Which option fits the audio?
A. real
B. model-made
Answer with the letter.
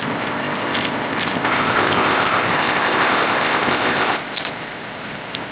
B